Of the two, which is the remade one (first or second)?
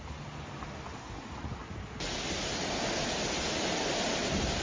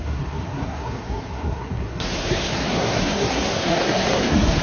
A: second